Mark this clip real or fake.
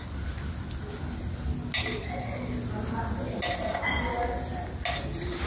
real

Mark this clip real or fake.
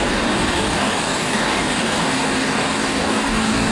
fake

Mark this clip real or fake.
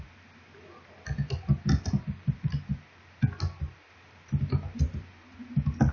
real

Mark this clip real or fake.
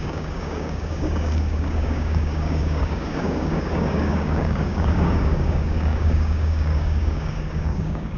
fake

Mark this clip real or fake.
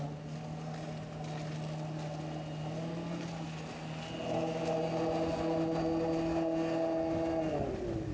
real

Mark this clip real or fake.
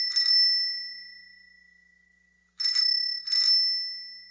real